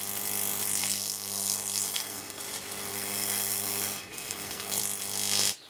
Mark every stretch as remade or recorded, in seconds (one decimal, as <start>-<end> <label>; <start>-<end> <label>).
0.0-0.8 recorded; 0.8-2.4 remade; 2.4-2.9 recorded; 2.9-4.8 remade; 4.8-5.7 recorded